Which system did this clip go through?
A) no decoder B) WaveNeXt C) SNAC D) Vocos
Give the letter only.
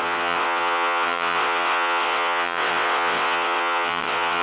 B